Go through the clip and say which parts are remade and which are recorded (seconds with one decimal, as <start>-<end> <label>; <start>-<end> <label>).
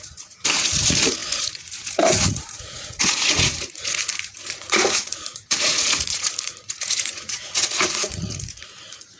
0.0-9.2 remade